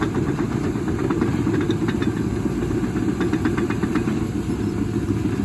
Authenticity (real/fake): real